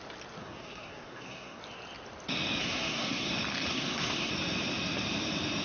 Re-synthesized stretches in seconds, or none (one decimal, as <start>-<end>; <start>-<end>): 0.4-1.6; 2.6-3.3; 3.7-4.3